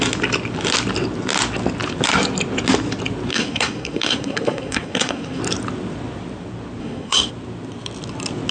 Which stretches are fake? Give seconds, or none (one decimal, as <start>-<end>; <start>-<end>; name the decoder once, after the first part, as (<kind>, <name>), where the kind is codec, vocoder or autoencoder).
3.3-5.4 (codec, SNAC); 6.8-7.3